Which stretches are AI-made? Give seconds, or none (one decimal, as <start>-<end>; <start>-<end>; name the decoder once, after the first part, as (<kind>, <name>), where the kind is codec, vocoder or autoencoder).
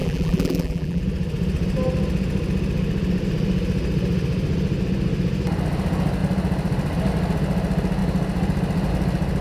0.0-1.0 (vocoder, BigVGAN v2)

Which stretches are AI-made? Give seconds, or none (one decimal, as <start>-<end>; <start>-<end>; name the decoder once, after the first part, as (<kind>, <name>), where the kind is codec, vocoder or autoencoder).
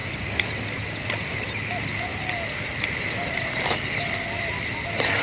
0.0-2.1 (vocoder, BigVGAN v2); 3.3-5.2